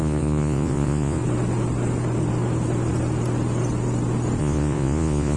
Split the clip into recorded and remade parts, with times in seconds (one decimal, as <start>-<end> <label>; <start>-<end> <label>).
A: 0.0-1.2 remade; 1.2-4.4 recorded; 4.4-5.4 remade